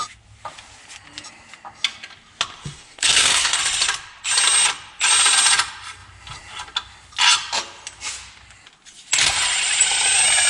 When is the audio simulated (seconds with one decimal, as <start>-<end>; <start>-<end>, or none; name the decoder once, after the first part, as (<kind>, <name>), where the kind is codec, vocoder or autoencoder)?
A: 2.6-3.6 (codec, SNAC)